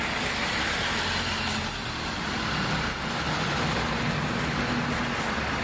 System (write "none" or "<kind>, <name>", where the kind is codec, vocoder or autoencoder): none